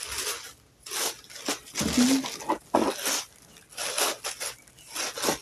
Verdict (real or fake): real